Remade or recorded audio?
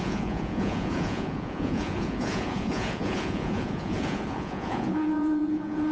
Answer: remade